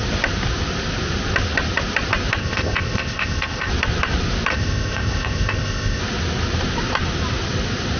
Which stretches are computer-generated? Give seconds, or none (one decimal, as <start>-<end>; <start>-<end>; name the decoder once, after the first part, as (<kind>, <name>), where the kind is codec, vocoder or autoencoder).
2.4-3.7 (codec, ZipCodec); 4.5-6.0